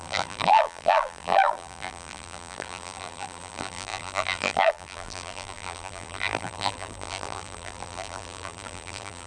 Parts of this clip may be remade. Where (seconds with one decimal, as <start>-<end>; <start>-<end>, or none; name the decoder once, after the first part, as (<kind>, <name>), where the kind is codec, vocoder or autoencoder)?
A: 0.0-9.3 (vocoder, BigVGAN v2)